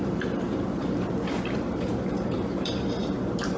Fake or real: fake